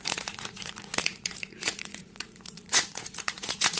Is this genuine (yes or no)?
no